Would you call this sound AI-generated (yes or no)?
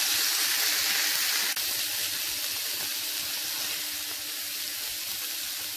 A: no